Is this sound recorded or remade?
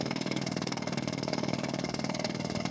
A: remade